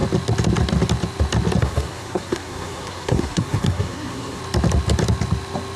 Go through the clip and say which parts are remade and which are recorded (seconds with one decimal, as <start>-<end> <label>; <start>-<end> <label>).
0.0-1.6 recorded; 1.6-4.4 remade; 4.4-5.8 recorded